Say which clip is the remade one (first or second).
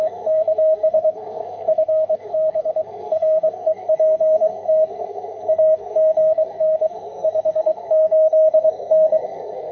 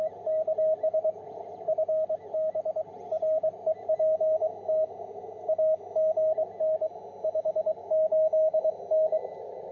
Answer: first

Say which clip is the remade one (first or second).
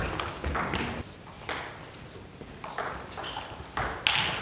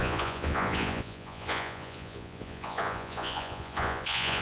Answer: second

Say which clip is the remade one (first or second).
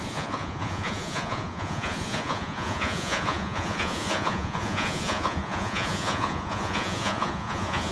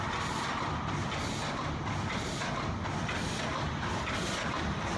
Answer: first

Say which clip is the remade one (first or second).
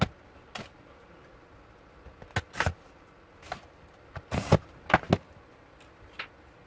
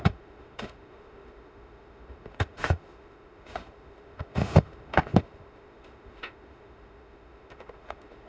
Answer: second